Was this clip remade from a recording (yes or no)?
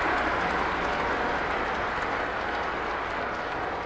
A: no